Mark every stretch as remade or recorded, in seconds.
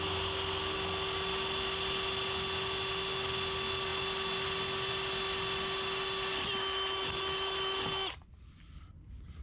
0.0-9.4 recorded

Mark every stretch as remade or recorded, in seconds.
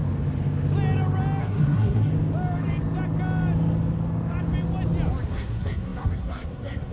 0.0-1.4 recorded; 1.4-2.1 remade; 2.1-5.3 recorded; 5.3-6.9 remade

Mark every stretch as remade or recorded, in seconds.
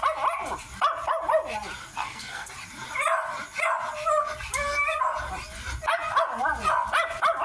0.0-1.9 recorded; 1.9-2.5 remade; 2.5-7.4 recorded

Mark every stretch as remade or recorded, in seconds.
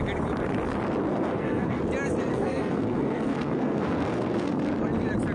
0.0-1.1 recorded; 1.1-1.8 remade; 1.8-2.3 recorded; 2.3-4.7 remade; 4.7-5.3 recorded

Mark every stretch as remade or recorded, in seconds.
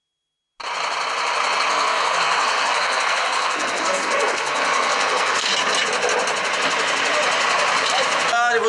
0.0-1.7 recorded; 1.7-5.5 remade; 5.5-8.7 recorded